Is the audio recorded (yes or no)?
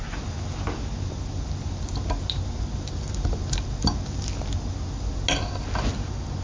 yes